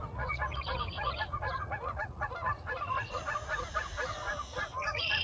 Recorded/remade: remade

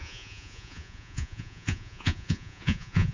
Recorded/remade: remade